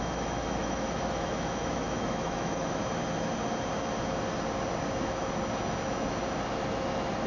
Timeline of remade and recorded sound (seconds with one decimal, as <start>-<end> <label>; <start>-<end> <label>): 0.0-2.8 remade; 2.8-7.3 recorded